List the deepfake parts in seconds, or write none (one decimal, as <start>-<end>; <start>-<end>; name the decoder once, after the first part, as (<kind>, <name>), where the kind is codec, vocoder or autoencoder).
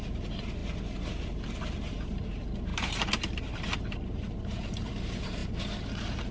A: 0.0-0.6 (vocoder, BigVGAN v2); 1.9-6.3